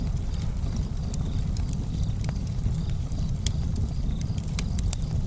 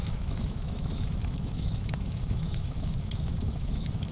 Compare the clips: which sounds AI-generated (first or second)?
second